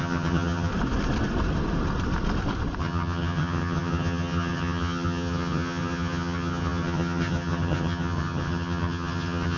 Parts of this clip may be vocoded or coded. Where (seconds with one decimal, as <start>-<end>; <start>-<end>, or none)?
0.0-0.7; 2.8-9.6